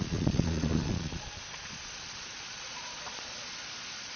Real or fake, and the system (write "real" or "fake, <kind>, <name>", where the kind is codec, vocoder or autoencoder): fake, vocoder, Vocos